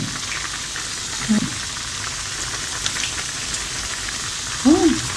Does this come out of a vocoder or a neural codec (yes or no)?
no